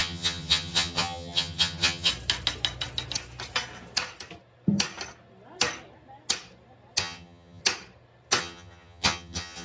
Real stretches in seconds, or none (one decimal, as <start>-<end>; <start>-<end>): 2.1-7.0; 7.6-8.4